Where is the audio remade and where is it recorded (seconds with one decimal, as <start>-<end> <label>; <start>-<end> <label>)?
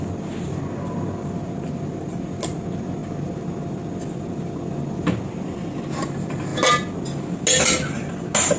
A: 0.0-8.6 recorded